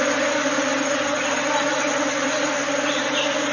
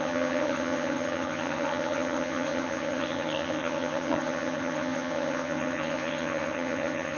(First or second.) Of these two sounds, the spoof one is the second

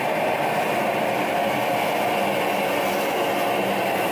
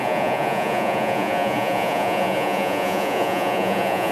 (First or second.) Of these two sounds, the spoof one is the second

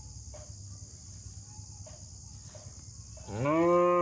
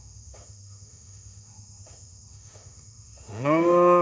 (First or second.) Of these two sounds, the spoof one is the second